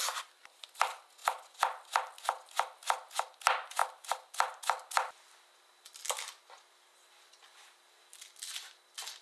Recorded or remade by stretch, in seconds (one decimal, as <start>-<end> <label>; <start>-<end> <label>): 0.0-9.2 recorded